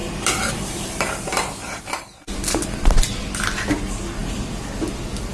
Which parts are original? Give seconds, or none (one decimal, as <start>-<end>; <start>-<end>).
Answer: 0.0-5.3